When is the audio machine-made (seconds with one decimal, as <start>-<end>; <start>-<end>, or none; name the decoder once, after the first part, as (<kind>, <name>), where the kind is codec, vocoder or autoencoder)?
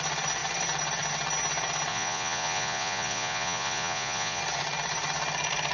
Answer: 1.9-4.4 (vocoder, Vocos)